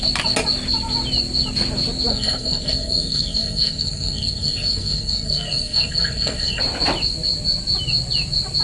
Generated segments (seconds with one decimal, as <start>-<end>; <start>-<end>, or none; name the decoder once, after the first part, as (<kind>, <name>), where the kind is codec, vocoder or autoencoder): 2.1-6.6 (codec, SNAC)